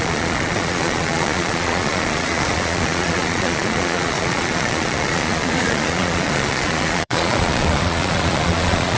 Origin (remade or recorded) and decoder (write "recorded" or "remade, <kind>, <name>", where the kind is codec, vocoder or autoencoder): remade, vocoder, Vocos